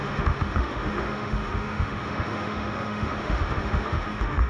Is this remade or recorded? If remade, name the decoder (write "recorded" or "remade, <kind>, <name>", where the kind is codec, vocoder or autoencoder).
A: remade, autoencoder, DAC-VAE